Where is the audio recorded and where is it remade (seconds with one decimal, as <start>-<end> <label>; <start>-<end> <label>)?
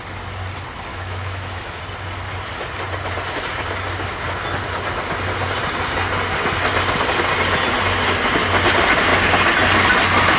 0.0-0.9 recorded; 0.9-1.8 remade; 1.8-10.4 recorded